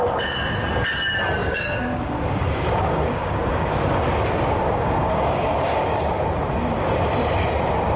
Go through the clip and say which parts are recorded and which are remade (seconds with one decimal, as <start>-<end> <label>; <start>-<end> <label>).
0.0-1.4 recorded; 1.4-6.2 remade; 6.2-8.0 recorded